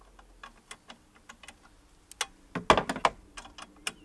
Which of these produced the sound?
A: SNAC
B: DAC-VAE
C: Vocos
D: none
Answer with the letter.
D